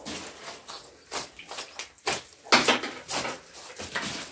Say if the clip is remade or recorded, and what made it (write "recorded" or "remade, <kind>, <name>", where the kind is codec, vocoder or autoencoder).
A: recorded